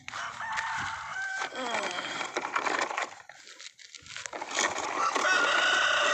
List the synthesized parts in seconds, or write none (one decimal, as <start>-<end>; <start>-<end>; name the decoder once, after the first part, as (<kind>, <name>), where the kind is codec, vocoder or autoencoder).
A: 1.1-3.0 (vocoder, BigVGAN v2)